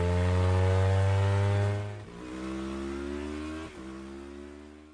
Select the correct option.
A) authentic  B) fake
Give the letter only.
A